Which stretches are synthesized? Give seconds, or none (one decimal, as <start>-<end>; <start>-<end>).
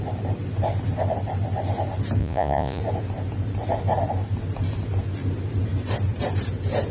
2.2-2.8